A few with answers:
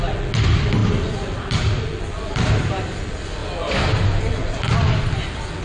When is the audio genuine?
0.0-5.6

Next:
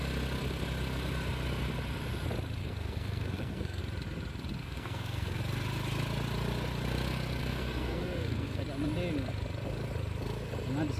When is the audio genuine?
0.0-2.6; 3.8-4.6; 5.4-7.4; 8.6-11.0

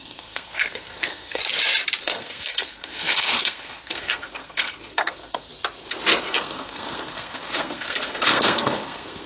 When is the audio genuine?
1.4-2.0; 5.5-6.2

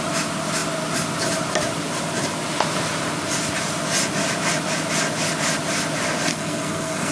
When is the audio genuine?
0.0-6.3

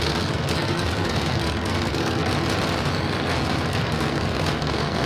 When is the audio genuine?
2.3-2.9

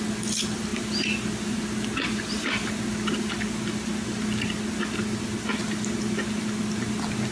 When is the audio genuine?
0.0-7.3